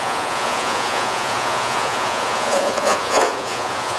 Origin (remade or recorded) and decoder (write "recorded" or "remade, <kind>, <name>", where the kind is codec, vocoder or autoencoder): remade, vocoder, Vocos